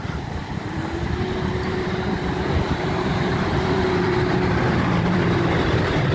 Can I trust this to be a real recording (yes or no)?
no